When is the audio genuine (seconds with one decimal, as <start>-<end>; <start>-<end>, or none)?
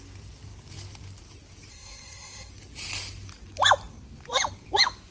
0.0-1.7; 2.5-5.1